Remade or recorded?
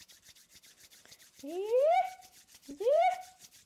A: remade